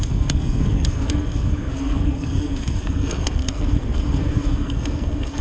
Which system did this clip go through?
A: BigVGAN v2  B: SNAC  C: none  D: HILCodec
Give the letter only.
B